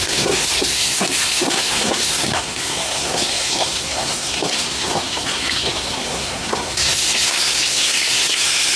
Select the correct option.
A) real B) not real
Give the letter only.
B